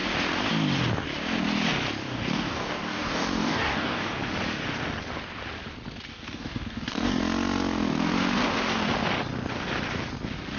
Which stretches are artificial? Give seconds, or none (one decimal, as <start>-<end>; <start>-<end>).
2.0-4.2; 6.1-7.2

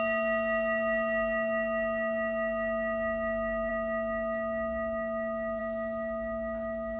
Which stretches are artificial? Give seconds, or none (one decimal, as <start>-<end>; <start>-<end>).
none

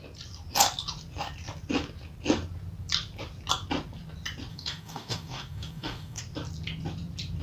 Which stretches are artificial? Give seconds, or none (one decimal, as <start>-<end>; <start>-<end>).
4.5-6.2

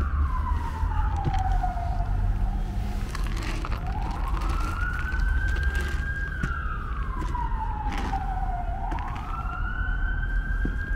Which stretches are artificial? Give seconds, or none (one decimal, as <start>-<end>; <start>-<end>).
none

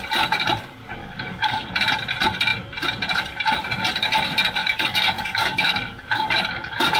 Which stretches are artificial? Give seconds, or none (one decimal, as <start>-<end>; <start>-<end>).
1.0-1.7; 4.6-7.0